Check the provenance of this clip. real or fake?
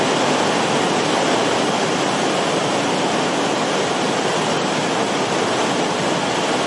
fake